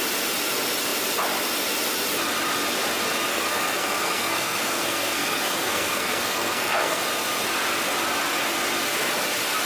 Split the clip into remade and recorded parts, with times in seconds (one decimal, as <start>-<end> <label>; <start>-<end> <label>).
0.0-3.3 recorded; 3.3-7.0 remade; 7.0-9.7 recorded